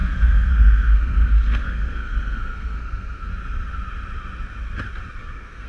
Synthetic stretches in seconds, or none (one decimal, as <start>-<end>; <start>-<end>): 0.0-3.3; 5.2-5.7